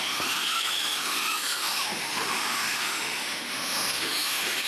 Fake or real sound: fake